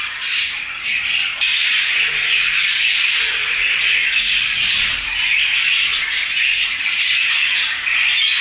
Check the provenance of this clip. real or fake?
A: real